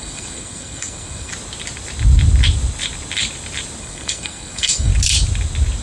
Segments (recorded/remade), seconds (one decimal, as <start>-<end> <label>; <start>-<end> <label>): 0.0-1.3 remade; 1.3-3.8 recorded; 3.8-4.9 remade; 4.9-5.8 recorded

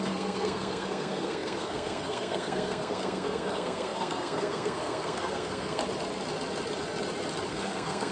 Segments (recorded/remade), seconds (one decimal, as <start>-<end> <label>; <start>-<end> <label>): 0.0-5.8 remade; 5.8-7.5 recorded; 7.5-8.1 remade

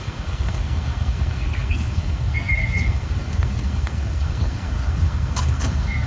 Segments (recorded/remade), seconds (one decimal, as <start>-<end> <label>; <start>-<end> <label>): 0.0-6.1 remade

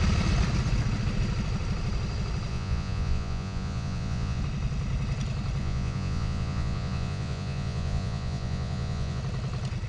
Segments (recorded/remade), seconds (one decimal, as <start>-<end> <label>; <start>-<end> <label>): 0.0-2.5 recorded; 2.5-4.4 remade; 4.4-5.6 recorded; 5.6-9.2 remade; 9.2-9.9 recorded

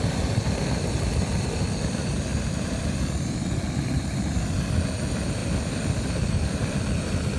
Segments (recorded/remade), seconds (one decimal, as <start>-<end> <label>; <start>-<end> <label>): 0.0-7.4 recorded

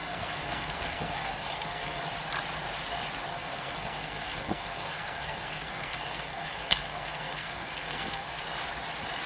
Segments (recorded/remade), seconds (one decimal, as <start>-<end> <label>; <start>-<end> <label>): 0.0-2.0 remade; 2.0-3.3 recorded; 3.3-8.4 remade; 8.4-9.3 recorded